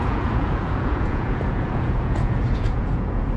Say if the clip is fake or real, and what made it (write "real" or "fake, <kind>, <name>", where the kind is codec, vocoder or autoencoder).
fake, vocoder, Vocos